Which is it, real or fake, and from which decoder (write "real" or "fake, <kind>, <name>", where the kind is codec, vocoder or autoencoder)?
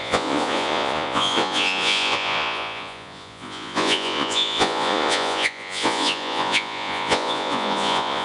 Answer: fake, vocoder, Vocos